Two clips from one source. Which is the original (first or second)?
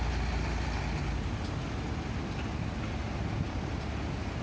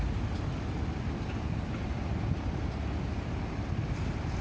first